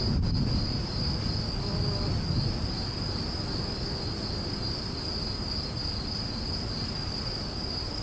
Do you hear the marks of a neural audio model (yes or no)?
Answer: no